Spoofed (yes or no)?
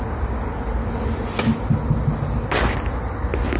no